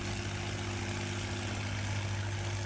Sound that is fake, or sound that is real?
real